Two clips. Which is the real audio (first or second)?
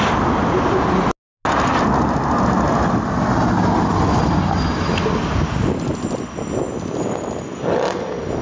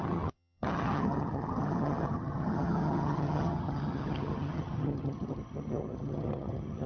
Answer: first